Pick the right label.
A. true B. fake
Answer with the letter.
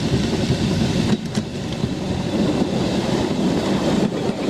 A